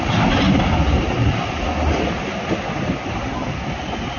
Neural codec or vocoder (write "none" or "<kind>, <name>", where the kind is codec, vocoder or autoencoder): none